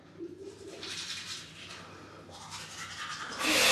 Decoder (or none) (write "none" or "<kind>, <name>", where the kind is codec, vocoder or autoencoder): none